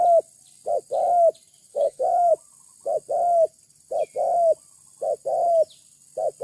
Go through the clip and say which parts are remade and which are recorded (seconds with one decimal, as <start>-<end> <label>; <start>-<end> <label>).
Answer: 0.0-1.7 recorded; 1.7-2.3 remade; 2.3-6.4 recorded